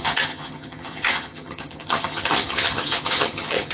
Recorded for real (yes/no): no